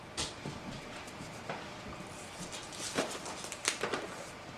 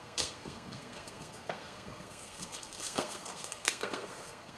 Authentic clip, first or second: first